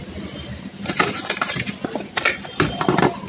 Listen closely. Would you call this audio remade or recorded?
recorded